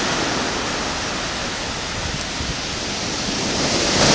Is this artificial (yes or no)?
no